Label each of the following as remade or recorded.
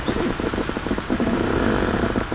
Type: recorded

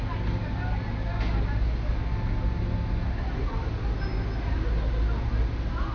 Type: recorded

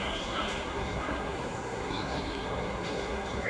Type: remade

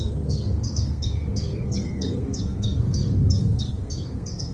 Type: remade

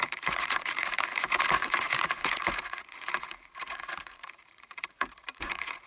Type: remade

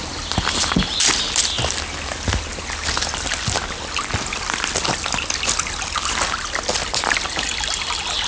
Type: recorded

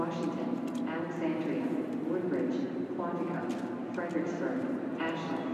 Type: recorded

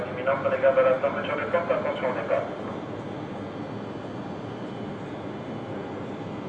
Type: recorded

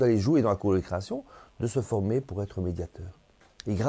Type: recorded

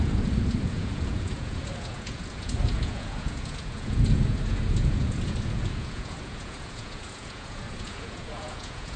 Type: remade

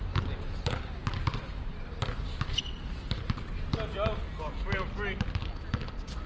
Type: recorded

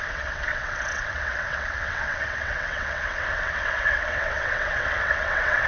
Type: remade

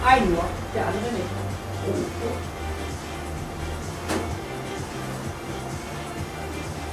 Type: recorded